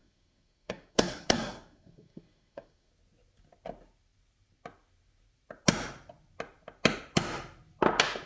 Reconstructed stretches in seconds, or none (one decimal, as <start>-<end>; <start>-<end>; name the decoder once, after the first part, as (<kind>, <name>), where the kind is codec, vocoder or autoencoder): 0.0-2.9 (codec, SNAC)